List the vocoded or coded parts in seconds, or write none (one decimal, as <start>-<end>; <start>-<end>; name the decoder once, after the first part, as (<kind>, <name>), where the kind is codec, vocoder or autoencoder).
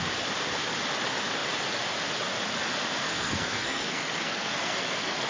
3.0-5.3 (codec, SNAC)